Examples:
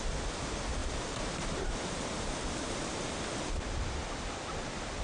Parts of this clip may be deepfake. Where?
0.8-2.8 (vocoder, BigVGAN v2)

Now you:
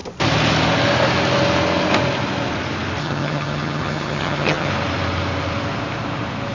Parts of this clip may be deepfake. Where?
3.0-4.7 (vocoder, HiFi-GAN)

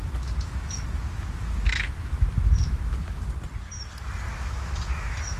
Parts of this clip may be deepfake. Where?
0.0-3.2 (autoencoder, DAC-VAE); 4.3-5.4

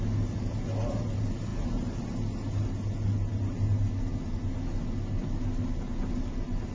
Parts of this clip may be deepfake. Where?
none